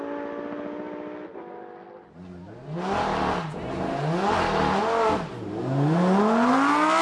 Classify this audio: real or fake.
real